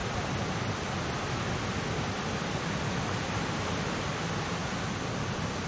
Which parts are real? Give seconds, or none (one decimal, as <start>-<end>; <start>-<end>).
3.4-5.7